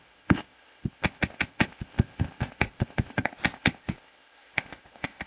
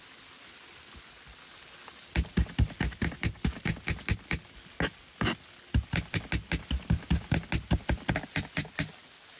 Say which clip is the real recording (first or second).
second